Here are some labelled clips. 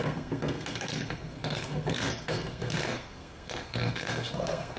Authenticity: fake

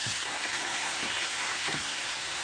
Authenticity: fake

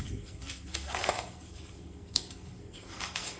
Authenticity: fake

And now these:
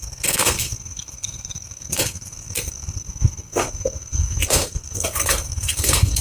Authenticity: fake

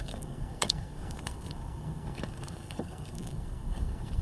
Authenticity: fake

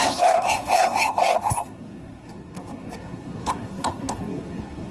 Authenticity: fake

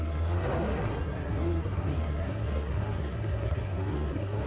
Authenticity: fake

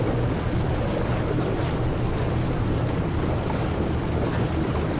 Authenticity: real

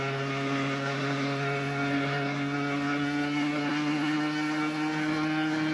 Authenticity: fake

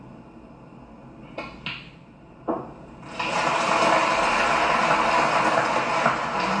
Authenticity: real